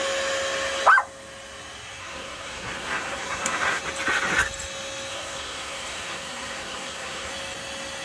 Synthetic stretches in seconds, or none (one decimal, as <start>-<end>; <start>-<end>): 2.0-3.8; 5.1-7.3